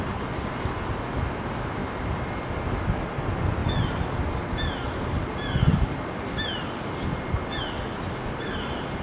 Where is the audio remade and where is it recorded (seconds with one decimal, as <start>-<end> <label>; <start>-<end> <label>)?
0.0-9.0 recorded